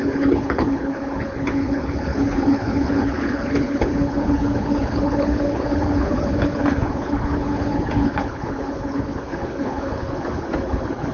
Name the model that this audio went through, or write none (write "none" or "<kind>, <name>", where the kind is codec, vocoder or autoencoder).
codec, HILCodec